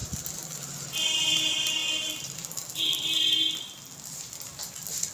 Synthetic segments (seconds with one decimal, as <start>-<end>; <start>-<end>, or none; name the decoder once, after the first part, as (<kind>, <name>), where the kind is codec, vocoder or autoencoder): none